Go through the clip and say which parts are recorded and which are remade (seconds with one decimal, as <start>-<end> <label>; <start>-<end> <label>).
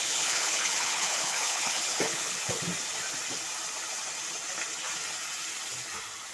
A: 0.0-2.6 remade; 2.6-6.3 recorded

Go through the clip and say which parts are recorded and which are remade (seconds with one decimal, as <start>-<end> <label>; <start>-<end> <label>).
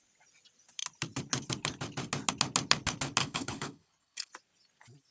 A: 0.0-3.2 recorded; 3.2-4.3 remade; 4.3-5.1 recorded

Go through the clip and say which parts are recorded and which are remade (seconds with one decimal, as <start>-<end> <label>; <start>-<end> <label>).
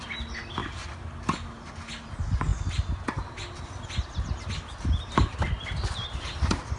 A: 0.0-6.8 recorded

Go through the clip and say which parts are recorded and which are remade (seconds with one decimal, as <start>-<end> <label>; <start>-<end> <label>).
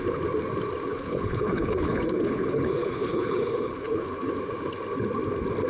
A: 0.0-0.9 recorded; 0.9-4.3 remade; 4.3-5.7 recorded